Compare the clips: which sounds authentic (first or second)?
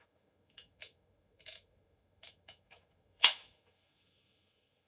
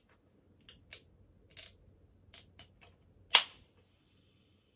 second